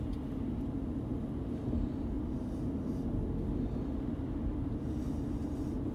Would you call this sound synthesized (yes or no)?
no